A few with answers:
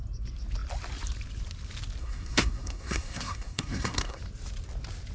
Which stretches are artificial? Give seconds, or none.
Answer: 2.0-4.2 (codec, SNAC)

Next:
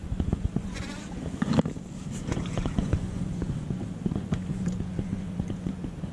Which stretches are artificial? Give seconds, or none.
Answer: 0.0-1.5 (vocoder, Vocos); 2.2-6.1

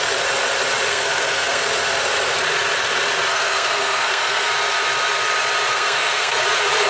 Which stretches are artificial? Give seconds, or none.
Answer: 0.9-1.6 (codec, SNAC); 3.3-4.5; 5.7-6.4

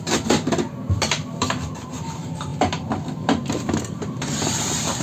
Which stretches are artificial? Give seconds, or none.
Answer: 2.5-4.0 (vocoder, BigVGAN v2)

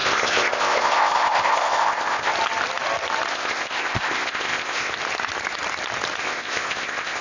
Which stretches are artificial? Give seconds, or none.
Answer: 0.0-2.3 (codec, ZipCodec); 3.3-4.9; 6.2-7.2